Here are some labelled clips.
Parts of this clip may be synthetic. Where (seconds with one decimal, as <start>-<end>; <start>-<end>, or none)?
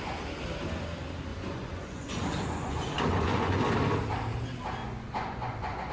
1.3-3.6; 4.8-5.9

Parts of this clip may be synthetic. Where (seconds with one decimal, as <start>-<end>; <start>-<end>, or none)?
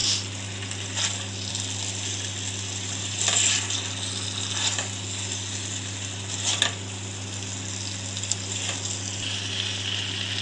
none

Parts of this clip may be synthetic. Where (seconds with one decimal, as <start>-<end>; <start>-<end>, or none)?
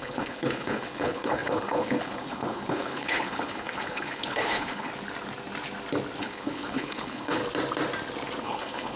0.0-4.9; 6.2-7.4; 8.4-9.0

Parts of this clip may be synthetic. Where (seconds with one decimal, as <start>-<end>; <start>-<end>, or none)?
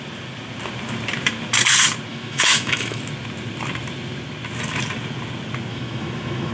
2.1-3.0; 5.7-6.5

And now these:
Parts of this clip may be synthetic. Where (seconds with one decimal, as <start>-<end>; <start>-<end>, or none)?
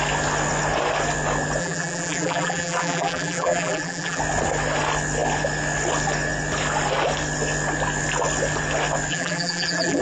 1.6-4.2; 9.1-10.0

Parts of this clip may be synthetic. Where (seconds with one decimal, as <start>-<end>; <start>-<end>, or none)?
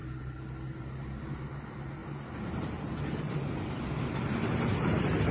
2.0-5.3